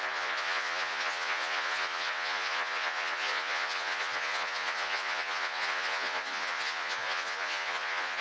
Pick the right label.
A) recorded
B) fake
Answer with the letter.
B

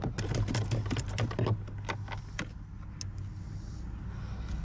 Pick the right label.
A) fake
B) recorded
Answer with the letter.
B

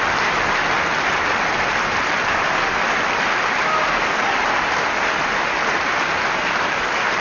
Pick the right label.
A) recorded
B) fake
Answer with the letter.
A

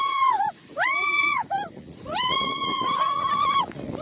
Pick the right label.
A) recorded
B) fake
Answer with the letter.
B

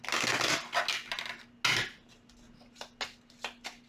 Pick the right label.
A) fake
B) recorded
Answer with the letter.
B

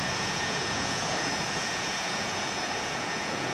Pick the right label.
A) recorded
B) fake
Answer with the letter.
B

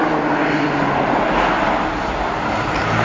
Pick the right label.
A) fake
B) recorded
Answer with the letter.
B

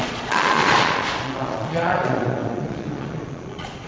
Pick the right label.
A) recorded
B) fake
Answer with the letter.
B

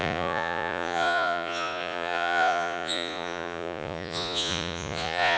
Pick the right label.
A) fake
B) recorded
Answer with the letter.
A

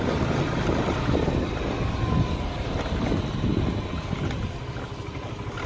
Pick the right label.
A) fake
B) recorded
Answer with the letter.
B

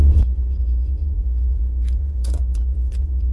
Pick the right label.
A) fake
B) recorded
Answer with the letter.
A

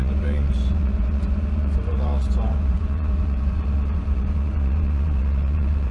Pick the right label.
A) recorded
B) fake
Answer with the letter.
B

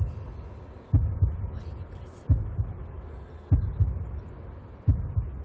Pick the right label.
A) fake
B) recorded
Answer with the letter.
B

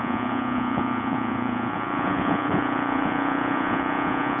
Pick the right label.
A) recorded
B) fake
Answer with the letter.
B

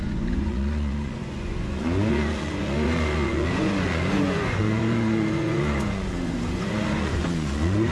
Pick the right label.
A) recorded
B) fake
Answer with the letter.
B